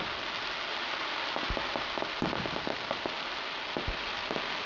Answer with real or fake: real